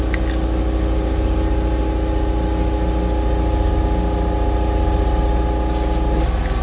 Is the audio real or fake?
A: real